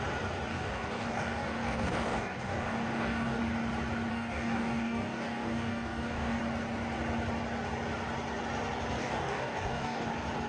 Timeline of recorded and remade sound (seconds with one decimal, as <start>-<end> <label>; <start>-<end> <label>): 0.0-0.5 recorded; 0.5-3.4 remade; 3.4-4.1 recorded; 4.1-6.4 remade; 6.4-9.0 recorded; 9.0-10.1 remade; 10.1-10.5 recorded